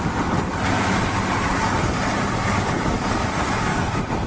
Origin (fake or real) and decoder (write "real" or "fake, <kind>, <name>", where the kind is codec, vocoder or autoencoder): real